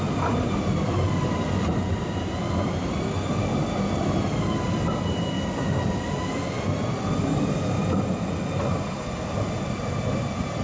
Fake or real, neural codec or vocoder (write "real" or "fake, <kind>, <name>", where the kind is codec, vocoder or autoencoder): real